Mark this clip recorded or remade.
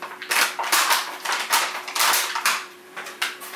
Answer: remade